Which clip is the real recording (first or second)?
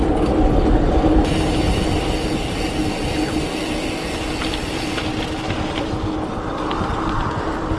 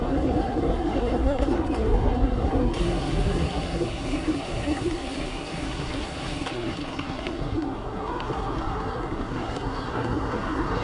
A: first